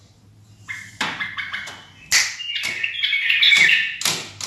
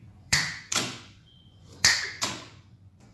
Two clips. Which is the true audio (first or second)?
first